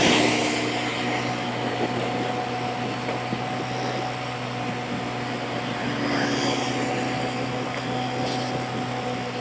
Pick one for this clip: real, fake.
real